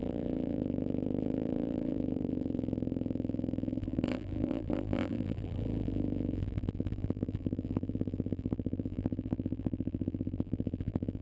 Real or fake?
fake